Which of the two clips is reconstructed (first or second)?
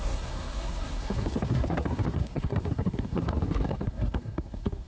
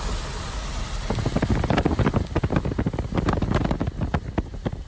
first